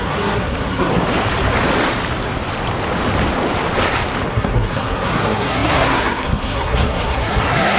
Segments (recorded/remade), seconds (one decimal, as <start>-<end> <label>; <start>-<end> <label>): 0.0-0.9 remade; 0.9-4.3 recorded; 4.3-7.8 remade